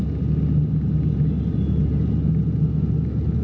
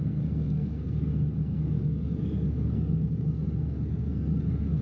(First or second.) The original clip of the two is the first